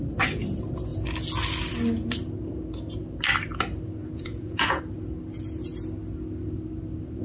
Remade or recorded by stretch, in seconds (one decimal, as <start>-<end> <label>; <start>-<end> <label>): 0.0-4.0 recorded; 4.0-4.8 remade; 4.8-7.2 recorded